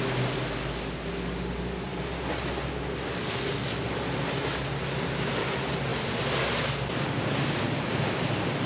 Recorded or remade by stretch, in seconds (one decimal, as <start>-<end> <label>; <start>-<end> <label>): 0.0-8.7 recorded